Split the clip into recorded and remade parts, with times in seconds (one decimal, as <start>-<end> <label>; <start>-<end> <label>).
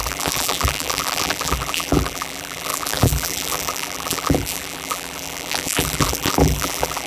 0.0-7.1 remade